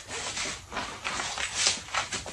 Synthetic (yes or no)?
no